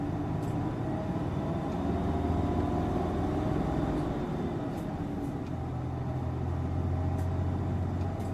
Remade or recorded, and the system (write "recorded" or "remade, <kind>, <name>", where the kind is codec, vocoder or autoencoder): recorded